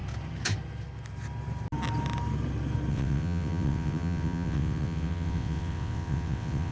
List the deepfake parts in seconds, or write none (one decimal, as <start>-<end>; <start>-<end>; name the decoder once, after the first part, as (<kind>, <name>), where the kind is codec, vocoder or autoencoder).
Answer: 2.9-6.7 (vocoder, WaveNeXt)

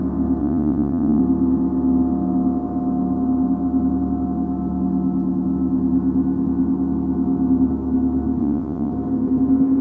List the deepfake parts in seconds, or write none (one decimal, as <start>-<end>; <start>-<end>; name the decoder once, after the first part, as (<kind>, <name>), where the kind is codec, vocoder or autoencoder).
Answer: 0.4-1.2 (vocoder, WaveNeXt); 8.4-8.9

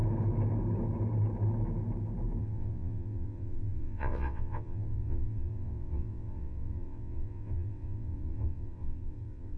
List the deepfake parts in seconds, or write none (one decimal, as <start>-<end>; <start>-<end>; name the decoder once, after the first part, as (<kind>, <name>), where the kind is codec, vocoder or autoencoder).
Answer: 2.4-9.6 (vocoder, WaveNeXt)

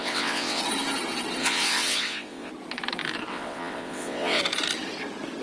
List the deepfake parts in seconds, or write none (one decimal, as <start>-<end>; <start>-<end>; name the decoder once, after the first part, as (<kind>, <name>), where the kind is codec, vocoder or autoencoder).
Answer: 0.0-0.6 (vocoder, WaveNeXt); 1.4-2.5; 3.3-4.4